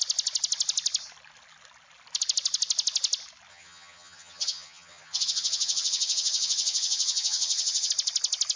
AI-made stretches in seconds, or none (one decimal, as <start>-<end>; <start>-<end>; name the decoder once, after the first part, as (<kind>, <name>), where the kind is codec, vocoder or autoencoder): 3.5-7.9 (vocoder, HiFi-GAN)